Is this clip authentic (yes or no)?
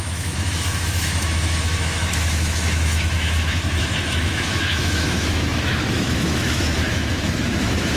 no